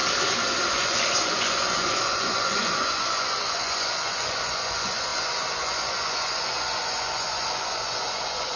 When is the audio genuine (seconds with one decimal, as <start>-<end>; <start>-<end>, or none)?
0.0-0.7